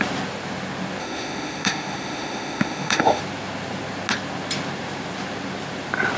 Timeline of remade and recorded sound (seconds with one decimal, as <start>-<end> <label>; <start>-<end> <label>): 0.0-1.0 recorded; 1.0-3.2 remade; 3.2-6.2 recorded